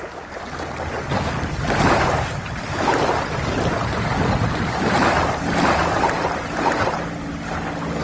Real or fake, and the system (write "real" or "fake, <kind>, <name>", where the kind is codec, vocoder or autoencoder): real